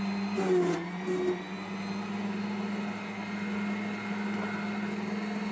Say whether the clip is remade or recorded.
recorded